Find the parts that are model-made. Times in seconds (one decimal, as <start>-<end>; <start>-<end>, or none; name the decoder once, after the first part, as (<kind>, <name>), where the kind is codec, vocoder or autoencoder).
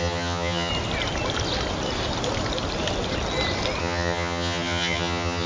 0.0-0.7 (vocoder, HiFi-GAN); 3.8-5.5